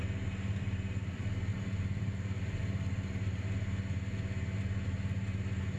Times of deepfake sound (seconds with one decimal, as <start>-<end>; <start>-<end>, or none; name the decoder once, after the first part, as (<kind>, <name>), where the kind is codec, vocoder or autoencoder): 1.5-2.6 (vocoder, BigVGAN v2)